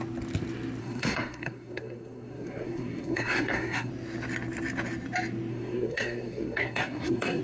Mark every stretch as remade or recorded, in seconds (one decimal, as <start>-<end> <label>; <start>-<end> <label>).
0.0-0.8 recorded; 0.8-3.9 remade; 3.9-5.5 recorded; 5.5-7.4 remade

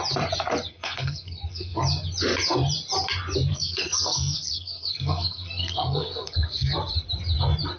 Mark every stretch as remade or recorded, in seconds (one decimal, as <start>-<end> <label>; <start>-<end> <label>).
0.0-0.7 recorded; 0.7-1.8 remade; 1.8-3.5 recorded; 3.5-6.7 remade; 6.7-7.8 recorded

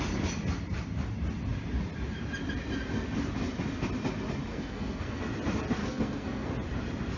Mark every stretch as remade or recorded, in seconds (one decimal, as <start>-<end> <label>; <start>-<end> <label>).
0.0-4.5 recorded; 4.5-5.2 remade; 5.2-5.8 recorded; 5.8-6.5 remade; 6.5-7.2 recorded

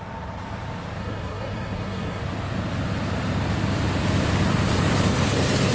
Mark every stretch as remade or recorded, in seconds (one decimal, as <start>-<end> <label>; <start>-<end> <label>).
0.0-1.0 recorded; 1.0-2.2 remade; 2.2-5.7 recorded

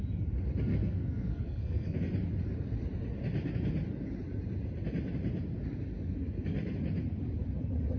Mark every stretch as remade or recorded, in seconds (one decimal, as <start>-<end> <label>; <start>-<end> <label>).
0.0-0.7 recorded; 0.7-2.0 remade; 2.0-8.0 recorded